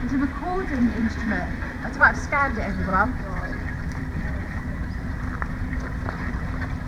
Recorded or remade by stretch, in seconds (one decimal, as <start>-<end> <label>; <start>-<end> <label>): 0.0-2.9 remade; 2.9-3.8 recorded; 3.8-6.9 remade